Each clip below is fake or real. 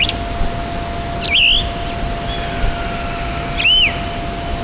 real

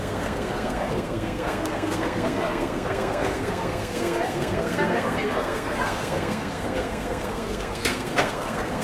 fake